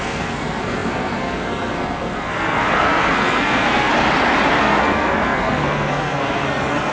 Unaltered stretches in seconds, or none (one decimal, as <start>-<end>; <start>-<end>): 3.9-4.6